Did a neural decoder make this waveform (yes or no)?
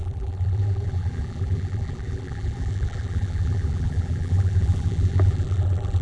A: yes